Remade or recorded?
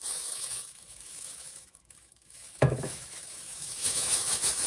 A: remade